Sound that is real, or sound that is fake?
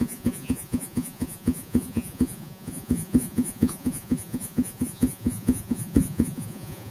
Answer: fake